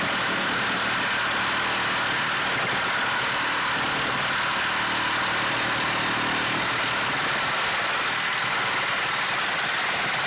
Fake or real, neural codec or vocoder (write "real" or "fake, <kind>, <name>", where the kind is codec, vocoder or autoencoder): real